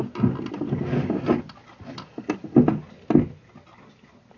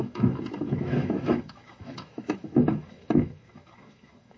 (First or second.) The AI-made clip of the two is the second